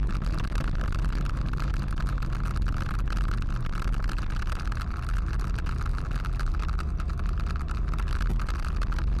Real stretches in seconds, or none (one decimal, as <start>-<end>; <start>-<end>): 0.0-5.9; 6.5-9.2